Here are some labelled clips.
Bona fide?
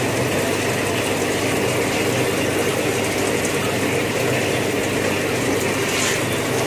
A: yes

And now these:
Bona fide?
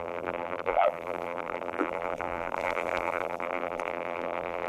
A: no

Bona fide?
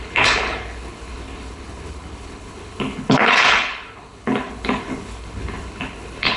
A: no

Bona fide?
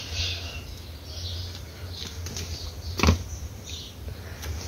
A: yes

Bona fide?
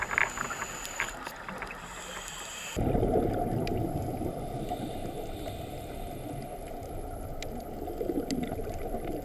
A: yes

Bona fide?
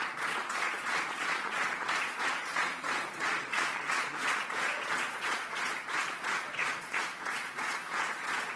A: no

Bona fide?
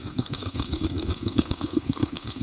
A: no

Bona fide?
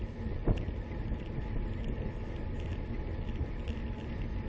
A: yes